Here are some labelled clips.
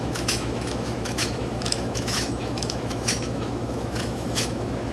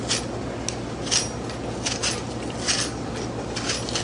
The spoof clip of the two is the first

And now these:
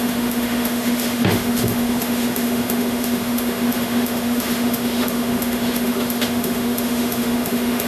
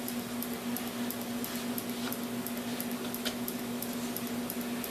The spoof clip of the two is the first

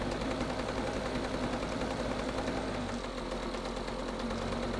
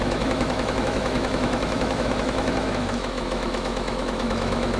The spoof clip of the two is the second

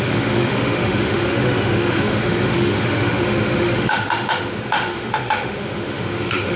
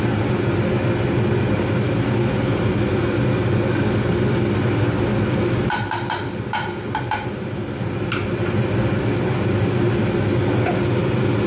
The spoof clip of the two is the first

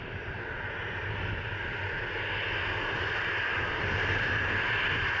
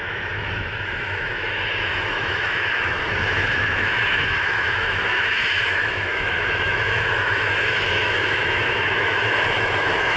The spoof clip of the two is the second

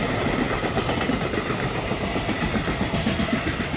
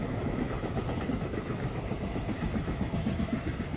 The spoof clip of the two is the second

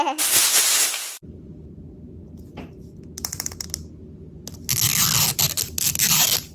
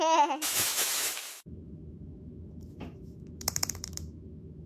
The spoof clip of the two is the second